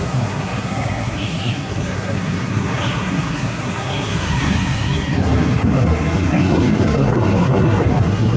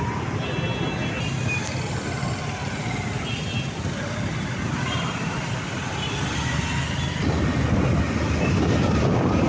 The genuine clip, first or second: second